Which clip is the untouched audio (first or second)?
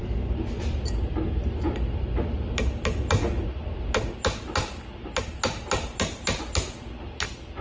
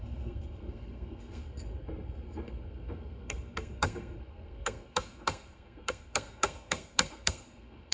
first